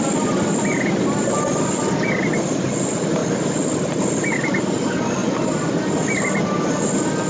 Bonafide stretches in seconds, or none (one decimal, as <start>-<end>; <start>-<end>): 0.0-7.3